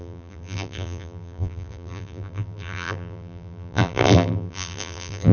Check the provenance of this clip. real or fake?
fake